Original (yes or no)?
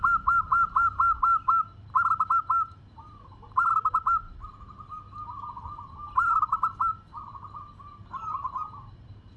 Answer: yes